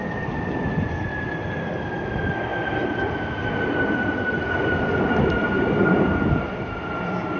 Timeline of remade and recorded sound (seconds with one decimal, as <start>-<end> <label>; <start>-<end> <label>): 0.0-7.4 recorded